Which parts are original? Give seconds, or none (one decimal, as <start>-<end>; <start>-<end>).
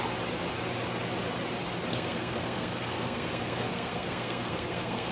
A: 0.0-1.9